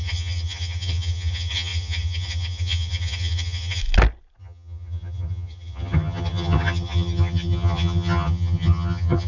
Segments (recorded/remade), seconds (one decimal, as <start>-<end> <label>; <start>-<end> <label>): 0.0-3.8 remade; 3.8-4.4 recorded; 4.4-9.3 remade